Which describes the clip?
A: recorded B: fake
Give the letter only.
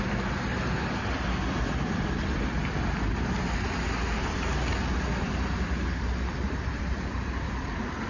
A